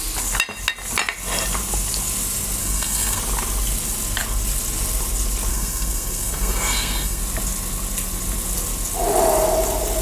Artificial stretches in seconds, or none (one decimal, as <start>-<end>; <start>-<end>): 2.6-3.2; 5.5-7.2